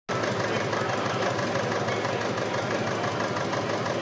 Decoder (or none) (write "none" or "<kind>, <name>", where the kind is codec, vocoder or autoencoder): none